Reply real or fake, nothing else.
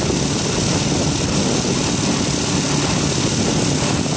real